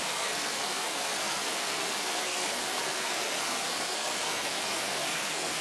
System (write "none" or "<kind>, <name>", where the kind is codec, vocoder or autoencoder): codec, SNAC